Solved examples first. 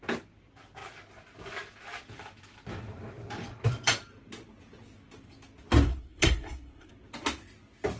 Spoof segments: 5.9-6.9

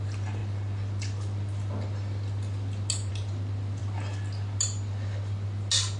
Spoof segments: none

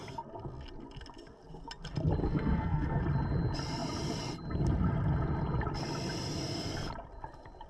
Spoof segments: 2.2-3.0

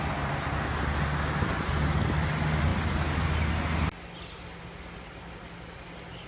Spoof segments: none